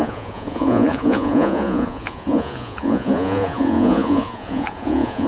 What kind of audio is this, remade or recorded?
remade